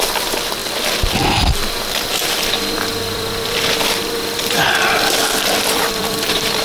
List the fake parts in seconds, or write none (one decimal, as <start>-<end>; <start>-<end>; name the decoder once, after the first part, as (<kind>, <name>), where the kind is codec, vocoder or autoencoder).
0.0-0.6 (vocoder, BigVGAN v2); 1.7-6.6